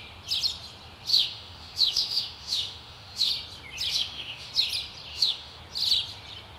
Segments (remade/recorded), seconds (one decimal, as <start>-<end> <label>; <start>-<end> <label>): 0.0-1.1 recorded; 1.1-3.3 remade; 3.3-3.9 recorded; 3.9-4.5 remade; 4.5-5.1 recorded; 5.1-5.6 remade; 5.6-6.6 recorded